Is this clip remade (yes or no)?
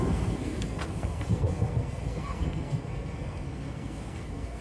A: yes